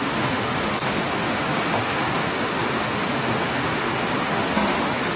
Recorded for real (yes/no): no